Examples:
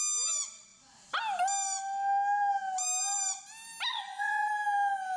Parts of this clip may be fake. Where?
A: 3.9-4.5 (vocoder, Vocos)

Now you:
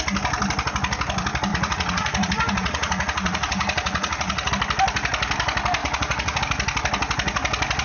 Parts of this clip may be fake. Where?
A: 1.5-4.5 (vocoder, Vocos); 5.8-6.4

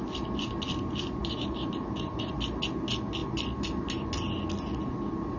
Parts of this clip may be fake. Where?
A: 1.2-2.3 (vocoder, BigVGAN v2)